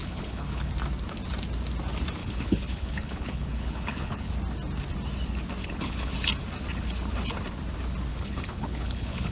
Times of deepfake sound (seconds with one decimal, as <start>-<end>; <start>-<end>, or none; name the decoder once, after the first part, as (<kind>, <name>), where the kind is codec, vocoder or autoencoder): 0.0-0.7 (codec, HILCodec); 2.2-4.3; 5.6-6.1; 8.1-9.3

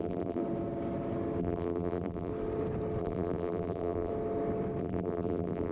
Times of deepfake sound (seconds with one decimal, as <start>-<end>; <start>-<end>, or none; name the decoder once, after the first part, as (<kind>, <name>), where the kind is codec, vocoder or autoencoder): 0.0-0.4 (vocoder, BigVGAN v2); 1.4-2.3; 3.0-4.1; 4.8-5.7

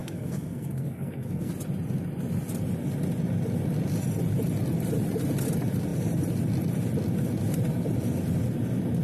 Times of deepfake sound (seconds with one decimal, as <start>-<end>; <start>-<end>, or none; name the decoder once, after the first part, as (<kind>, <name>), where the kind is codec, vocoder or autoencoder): 0.0-1.5 (codec, SNAC)

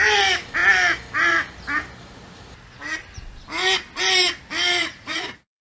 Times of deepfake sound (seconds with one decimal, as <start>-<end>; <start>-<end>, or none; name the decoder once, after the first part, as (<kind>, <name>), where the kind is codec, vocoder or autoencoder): 4.8-5.6 (vocoder, Vocos)

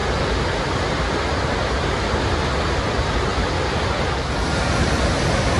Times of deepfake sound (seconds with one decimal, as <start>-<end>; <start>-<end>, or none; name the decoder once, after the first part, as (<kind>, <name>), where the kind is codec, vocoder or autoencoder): none

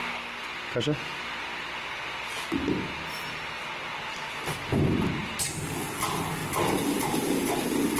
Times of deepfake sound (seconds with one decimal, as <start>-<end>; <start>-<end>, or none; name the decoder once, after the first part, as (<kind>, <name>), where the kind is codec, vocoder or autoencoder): none